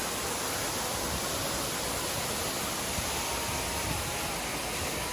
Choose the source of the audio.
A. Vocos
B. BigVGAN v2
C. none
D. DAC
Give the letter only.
C